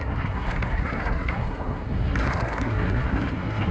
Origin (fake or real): fake